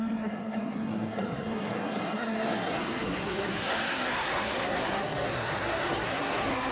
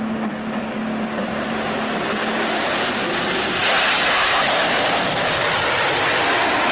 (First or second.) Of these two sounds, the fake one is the first